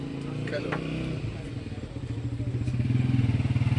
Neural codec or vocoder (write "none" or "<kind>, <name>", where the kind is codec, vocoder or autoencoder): none